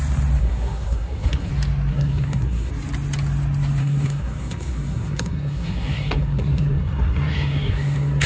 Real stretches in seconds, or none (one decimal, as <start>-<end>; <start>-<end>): 0.0-0.4; 1.5-1.9; 2.7-3.8